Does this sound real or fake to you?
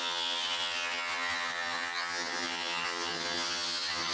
fake